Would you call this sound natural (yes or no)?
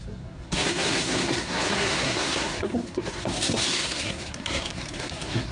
no